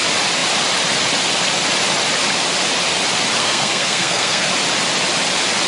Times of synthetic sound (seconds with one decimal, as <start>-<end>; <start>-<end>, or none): 3.4-4.5